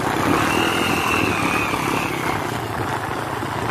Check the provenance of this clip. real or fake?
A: real